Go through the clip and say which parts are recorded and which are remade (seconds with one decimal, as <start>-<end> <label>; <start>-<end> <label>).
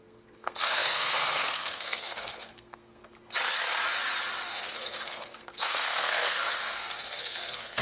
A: 0.0-3.0 remade; 3.0-4.5 recorded; 4.5-7.8 remade